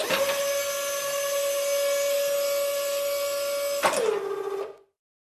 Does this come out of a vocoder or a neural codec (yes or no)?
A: no